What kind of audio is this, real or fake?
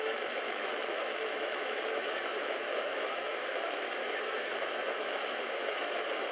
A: fake